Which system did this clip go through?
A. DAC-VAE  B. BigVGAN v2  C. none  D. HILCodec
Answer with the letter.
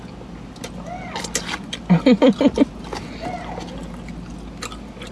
C